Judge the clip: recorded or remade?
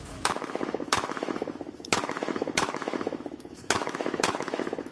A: remade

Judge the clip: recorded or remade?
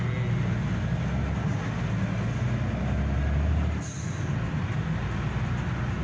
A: recorded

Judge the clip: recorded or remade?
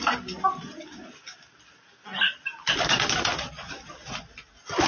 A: recorded